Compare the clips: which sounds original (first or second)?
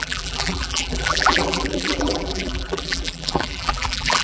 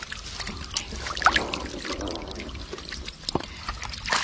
second